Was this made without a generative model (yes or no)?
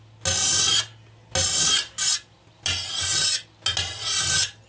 yes